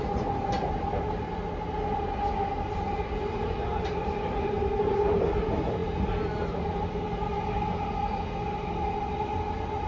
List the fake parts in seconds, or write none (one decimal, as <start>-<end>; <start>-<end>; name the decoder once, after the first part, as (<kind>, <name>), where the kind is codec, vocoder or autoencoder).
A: none